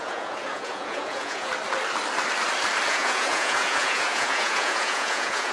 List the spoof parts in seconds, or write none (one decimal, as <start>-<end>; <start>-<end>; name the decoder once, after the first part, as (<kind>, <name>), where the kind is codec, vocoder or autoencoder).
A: 0.0-1.5 (vocoder, Vocos); 2.9-5.5